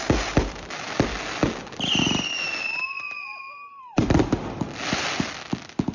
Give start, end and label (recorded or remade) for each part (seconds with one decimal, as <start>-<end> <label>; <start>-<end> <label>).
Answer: 0.0-5.9 recorded